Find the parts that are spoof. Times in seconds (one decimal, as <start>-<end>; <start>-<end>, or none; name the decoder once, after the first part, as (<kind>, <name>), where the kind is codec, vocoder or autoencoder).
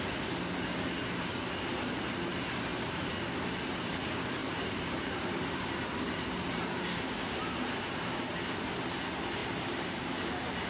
2.7-3.3 (vocoder, BigVGAN v2); 4.4-8.2; 9.4-10.7